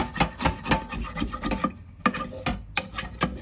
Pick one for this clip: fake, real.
real